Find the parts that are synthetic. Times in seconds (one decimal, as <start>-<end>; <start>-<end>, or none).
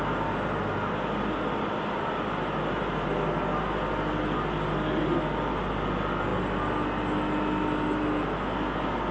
none